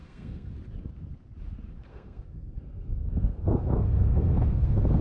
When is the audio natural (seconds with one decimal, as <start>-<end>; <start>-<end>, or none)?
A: 0.5-1.9